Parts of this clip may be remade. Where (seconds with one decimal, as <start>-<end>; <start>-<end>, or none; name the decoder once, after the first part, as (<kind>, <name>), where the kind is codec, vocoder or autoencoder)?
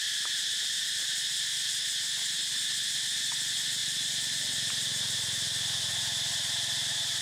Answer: 3.8-4.7 (vocoder, BigVGAN v2)